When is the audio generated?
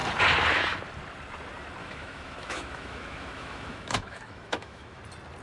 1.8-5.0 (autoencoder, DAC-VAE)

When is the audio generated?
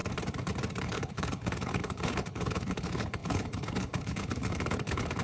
0.8-5.2 (codec, HILCodec)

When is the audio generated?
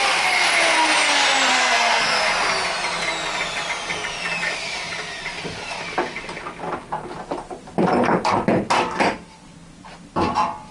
1.5-2.2 (codec, SNAC)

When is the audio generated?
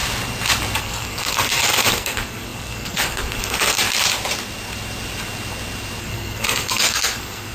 0.8-3.8 (codec, SNAC); 6.0-7.5